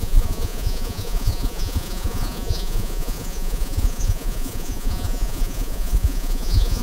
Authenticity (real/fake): fake